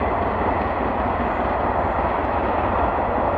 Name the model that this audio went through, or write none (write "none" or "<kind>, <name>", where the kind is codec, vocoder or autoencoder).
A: none